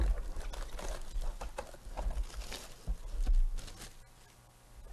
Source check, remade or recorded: recorded